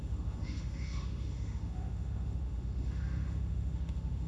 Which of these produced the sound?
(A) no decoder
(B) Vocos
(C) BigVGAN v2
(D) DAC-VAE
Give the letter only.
D